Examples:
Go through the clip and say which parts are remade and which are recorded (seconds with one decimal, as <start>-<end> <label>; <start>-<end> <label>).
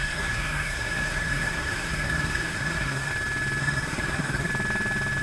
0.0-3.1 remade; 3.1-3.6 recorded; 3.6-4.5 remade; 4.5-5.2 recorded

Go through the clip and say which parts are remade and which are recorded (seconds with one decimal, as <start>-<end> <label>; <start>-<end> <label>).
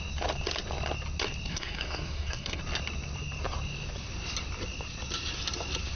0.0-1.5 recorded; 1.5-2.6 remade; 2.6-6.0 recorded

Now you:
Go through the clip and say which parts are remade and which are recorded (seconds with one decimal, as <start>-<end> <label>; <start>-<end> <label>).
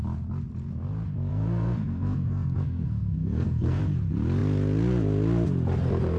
0.0-1.3 recorded; 1.3-3.8 remade; 3.8-6.2 recorded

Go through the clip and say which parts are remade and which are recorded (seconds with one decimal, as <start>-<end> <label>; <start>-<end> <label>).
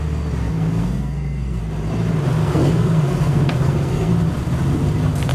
0.0-0.4 recorded; 0.4-1.6 remade; 1.6-2.4 recorded; 2.4-4.1 remade; 4.1-5.3 recorded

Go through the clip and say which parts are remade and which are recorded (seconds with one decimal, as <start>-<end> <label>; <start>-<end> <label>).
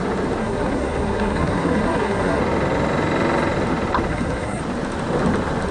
0.0-0.4 recorded; 0.4-2.4 remade; 2.4-4.1 recorded; 4.1-4.6 remade; 4.6-5.7 recorded